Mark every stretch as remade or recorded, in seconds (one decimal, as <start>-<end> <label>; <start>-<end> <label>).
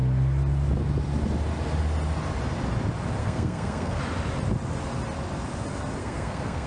0.0-3.2 recorded; 3.2-4.0 remade; 4.0-6.0 recorded; 6.0-6.7 remade